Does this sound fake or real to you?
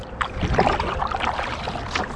real